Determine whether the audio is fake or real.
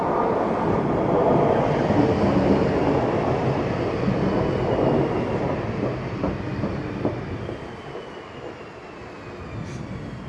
real